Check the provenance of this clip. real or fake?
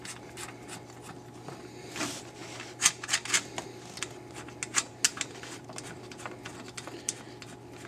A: real